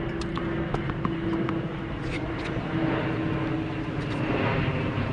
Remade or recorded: recorded